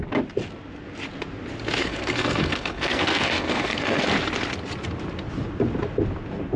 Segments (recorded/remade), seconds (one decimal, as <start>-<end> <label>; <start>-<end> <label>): 0.0-1.8 recorded; 1.8-4.1 remade; 4.1-6.6 recorded